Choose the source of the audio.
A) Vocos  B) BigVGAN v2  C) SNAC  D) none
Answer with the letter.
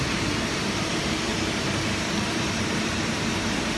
B